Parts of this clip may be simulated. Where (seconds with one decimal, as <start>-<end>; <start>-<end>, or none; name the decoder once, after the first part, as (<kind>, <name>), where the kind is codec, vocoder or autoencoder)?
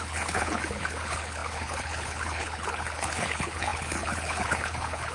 0.0-5.1 (codec, HILCodec)